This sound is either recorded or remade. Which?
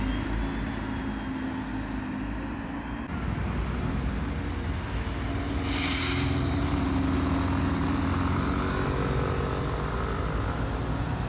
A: recorded